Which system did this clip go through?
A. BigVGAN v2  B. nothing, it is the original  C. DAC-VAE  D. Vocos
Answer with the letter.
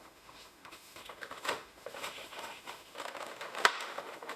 C